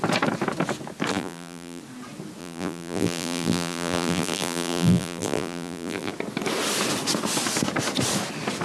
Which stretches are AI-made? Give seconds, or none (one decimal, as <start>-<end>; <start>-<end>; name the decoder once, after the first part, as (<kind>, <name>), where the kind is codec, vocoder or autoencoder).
1.1-1.8 (vocoder, BigVGAN v2); 2.4-6.1